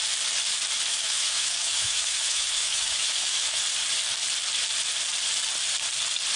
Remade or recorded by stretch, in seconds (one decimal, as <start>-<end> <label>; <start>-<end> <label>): 0.0-0.9 recorded; 0.9-3.6 remade; 3.6-6.4 recorded